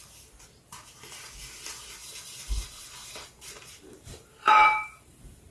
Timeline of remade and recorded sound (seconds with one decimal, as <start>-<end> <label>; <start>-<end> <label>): 0.0-2.0 recorded; 2.0-5.5 remade